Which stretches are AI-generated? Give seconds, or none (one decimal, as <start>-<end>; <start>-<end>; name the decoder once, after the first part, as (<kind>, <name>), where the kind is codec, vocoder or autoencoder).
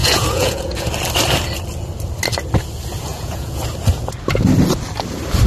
0.0-0.9 (vocoder, Vocos); 3.1-3.6